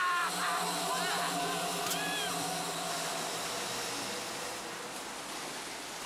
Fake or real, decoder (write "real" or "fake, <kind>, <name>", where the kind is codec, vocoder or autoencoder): real